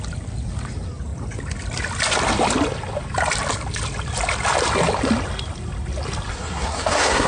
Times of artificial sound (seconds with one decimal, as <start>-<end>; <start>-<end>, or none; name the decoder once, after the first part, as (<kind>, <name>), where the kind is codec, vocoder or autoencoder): 6.3-7.3 (codec, SNAC)